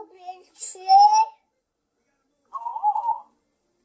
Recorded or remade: recorded